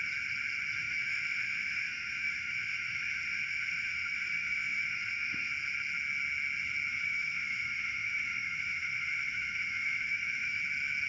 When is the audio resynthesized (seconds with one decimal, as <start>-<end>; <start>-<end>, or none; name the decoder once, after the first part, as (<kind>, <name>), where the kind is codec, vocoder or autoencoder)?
0.8-5.5 (autoencoder, DAC-VAE); 6.9-10.6